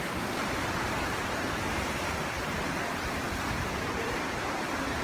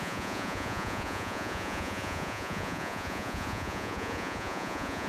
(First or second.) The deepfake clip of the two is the second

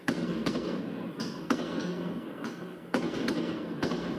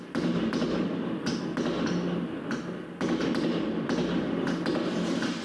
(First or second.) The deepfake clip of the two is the first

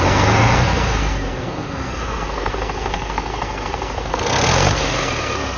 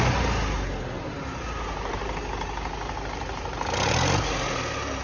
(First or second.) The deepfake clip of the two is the first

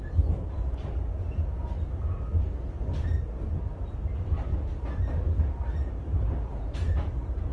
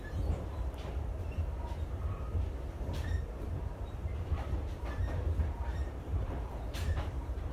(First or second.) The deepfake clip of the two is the second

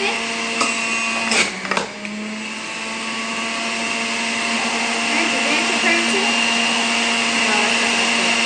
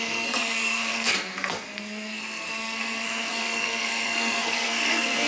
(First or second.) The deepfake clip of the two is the second